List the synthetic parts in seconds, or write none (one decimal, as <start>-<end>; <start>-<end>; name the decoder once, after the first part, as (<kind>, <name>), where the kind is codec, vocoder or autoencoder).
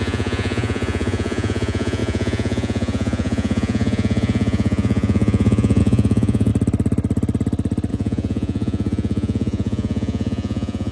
0.0-6.5 (vocoder, Vocos); 7.9-10.9